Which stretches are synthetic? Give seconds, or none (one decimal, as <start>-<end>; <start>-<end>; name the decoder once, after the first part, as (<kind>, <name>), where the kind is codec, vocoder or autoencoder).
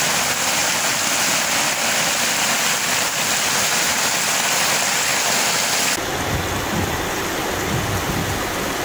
none